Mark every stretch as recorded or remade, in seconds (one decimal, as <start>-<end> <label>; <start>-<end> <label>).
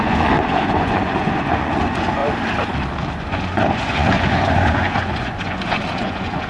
0.0-2.2 remade; 2.2-3.1 recorded; 3.1-6.5 remade